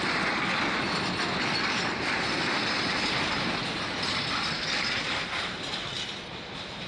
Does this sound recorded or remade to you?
recorded